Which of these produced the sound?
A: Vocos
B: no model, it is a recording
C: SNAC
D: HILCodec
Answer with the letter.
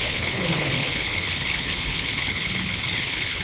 D